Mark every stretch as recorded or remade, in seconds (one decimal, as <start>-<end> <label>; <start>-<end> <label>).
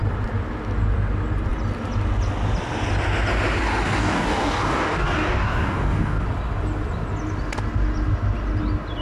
0.0-4.0 recorded; 4.0-6.2 remade; 6.2-9.0 recorded